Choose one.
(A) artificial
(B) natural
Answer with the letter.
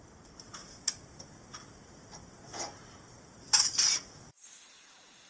B